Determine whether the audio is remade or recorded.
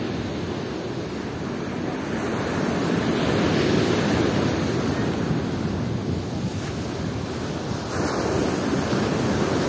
recorded